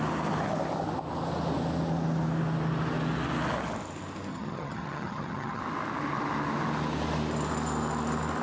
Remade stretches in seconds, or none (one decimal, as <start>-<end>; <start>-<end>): 4.3-5.6